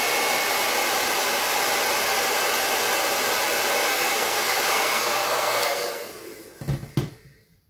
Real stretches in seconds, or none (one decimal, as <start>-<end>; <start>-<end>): 0.0-3.8; 6.1-7.7